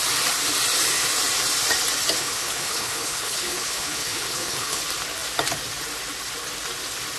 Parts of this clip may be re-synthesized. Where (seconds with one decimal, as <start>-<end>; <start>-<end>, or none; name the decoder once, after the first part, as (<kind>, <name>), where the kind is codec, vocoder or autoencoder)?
2.2-4.8 (codec, HILCodec)